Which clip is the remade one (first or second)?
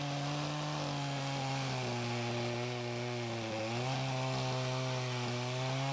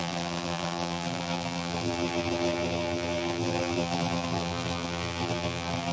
second